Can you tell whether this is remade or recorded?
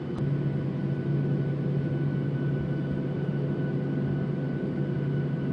recorded